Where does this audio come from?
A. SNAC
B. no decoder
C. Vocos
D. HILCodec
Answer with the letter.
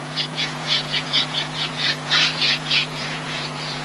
C